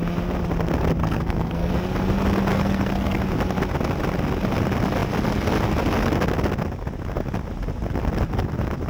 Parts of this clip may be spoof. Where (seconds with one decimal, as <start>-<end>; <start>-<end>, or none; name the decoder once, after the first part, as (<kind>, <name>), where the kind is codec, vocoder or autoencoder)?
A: 1.0-1.7 (codec, SNAC); 2.5-3.2